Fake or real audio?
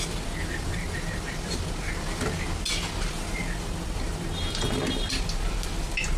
real